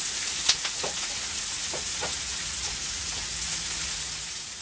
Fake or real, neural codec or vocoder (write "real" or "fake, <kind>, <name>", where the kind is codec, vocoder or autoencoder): fake, vocoder, Vocos